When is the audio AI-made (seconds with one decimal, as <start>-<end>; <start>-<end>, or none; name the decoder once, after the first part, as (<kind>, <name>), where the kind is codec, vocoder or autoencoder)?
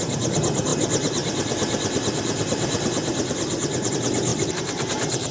4.3-5.3 (vocoder, BigVGAN v2)